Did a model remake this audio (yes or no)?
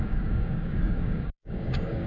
yes